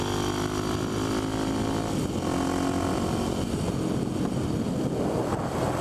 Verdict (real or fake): real